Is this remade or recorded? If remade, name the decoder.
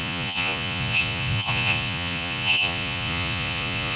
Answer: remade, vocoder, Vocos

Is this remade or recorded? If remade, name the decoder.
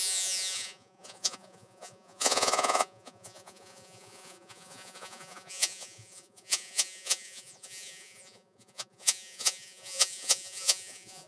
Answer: remade, vocoder, Vocos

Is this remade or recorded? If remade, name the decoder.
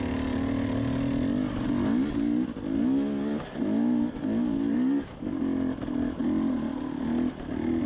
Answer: recorded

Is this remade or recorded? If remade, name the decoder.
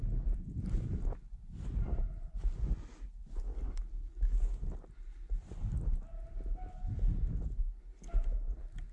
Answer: recorded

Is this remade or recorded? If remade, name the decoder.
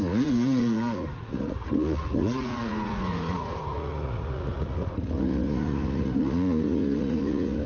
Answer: remade, vocoder, Vocos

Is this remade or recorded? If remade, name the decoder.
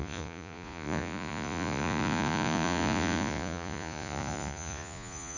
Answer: remade, vocoder, Vocos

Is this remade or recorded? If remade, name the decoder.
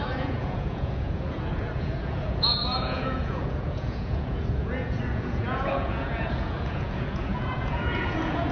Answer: remade, vocoder, Vocos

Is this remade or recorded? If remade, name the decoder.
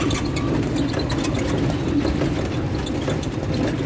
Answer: recorded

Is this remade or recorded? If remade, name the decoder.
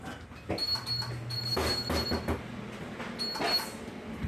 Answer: recorded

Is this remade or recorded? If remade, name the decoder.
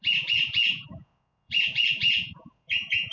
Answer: remade, vocoder, Vocos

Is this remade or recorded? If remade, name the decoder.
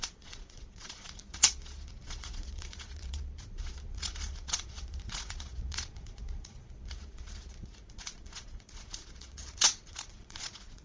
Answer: remade, vocoder, Vocos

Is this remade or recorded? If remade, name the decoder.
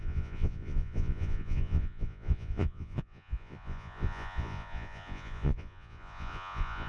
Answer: remade, vocoder, Vocos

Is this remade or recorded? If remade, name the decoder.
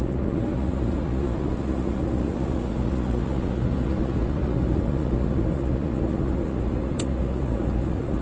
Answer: remade, vocoder, Vocos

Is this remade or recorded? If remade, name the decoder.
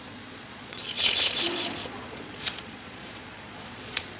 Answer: remade, vocoder, Vocos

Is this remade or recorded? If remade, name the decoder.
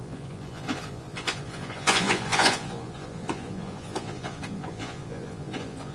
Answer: remade, vocoder, Vocos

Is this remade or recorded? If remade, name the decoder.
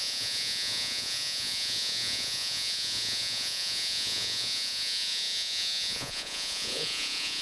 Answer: remade, vocoder, Vocos